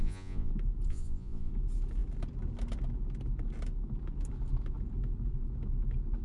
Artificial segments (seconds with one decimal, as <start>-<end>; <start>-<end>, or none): 0.0-0.5; 0.9-1.5